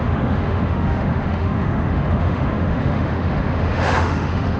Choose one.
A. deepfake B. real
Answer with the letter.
A